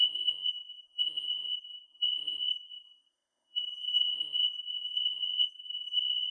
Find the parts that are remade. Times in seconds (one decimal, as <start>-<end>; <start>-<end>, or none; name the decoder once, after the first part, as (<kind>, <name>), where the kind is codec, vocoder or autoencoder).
0.0-6.3 (codec, SNAC)